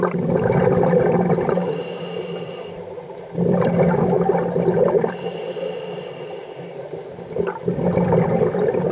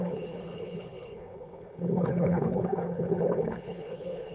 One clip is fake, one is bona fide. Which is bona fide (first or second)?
first